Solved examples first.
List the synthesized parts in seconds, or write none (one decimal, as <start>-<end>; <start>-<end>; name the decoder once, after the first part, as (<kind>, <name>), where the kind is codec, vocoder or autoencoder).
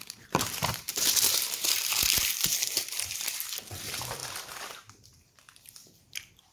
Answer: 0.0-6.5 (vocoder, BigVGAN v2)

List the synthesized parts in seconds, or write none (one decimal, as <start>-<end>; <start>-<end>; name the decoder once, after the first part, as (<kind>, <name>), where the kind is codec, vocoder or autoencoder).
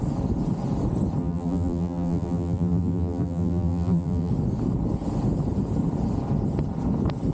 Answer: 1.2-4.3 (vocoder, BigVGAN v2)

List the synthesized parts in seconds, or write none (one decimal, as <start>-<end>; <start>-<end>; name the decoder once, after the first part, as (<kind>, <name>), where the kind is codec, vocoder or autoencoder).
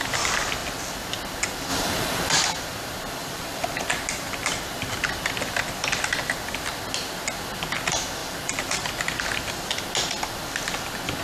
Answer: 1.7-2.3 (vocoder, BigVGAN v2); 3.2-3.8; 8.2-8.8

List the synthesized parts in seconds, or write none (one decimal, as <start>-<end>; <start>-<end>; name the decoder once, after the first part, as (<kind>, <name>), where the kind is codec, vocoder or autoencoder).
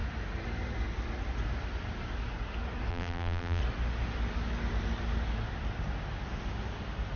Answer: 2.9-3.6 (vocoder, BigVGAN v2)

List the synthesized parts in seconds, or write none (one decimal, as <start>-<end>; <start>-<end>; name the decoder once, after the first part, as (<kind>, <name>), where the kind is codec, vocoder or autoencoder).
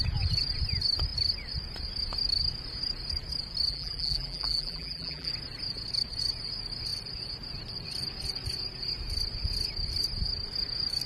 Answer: 3.7-5.3 (vocoder, BigVGAN v2)